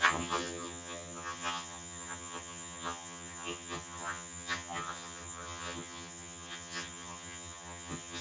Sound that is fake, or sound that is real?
fake